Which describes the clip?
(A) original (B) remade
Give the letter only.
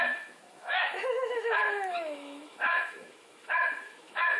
B